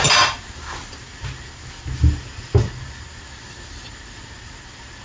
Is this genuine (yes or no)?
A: yes